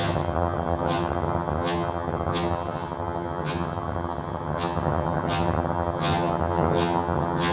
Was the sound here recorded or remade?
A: remade